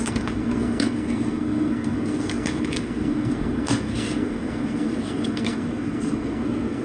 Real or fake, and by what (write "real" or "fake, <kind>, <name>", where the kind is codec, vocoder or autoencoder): fake, codec, SNAC